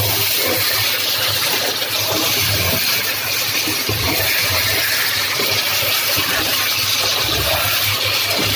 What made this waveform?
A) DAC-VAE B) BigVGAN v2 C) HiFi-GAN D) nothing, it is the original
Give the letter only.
D